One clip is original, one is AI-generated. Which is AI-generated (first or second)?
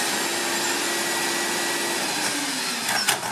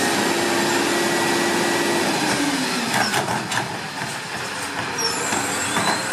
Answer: second